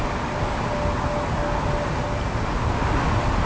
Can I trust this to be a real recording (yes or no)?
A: yes